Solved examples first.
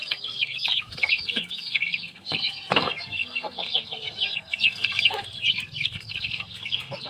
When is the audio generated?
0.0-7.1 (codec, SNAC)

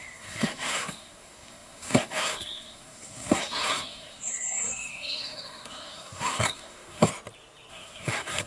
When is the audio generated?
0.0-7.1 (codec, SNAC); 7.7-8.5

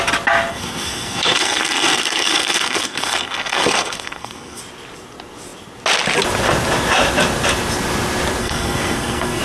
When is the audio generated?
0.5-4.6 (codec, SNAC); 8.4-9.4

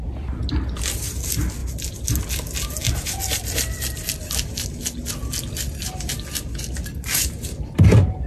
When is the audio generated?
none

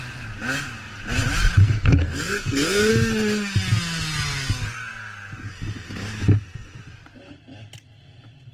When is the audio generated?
1.6-2.9 (codec, SNAC)

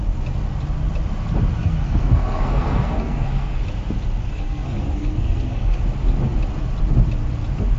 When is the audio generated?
1.6-3.6 (codec, SNAC); 4.3-5.8

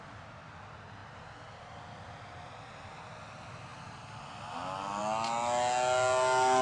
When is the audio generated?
none

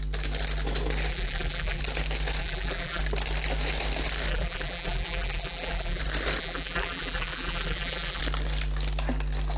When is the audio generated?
1.1-1.8 (vocoder, BigVGAN v2); 2.4-3.0; 4.3-6.0; 6.4-8.2